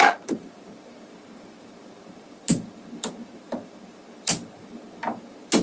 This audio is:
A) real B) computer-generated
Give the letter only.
B